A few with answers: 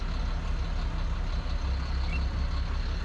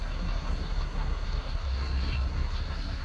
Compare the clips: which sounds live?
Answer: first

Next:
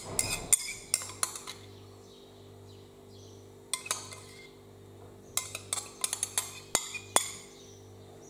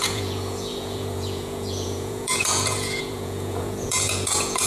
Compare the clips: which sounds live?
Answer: first